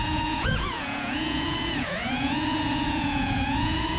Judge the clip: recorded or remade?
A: remade